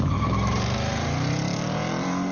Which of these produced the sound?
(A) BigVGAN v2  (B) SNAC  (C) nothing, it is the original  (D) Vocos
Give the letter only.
A